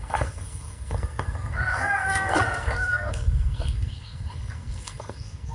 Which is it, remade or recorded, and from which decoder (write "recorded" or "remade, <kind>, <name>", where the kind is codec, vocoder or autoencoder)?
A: remade, codec, SNAC